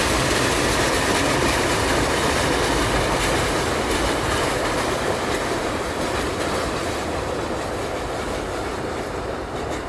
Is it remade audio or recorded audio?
remade